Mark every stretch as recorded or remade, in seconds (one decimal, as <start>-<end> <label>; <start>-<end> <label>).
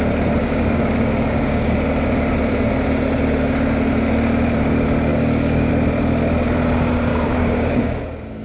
0.0-0.4 recorded; 0.4-1.8 remade; 1.8-5.1 recorded; 5.1-5.7 remade; 5.7-7.1 recorded; 7.1-8.0 remade; 8.0-8.4 recorded